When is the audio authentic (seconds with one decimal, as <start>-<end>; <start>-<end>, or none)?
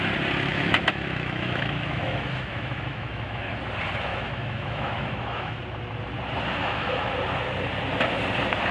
0.0-0.5; 3.6-4.1; 5.6-6.6; 7.1-8.7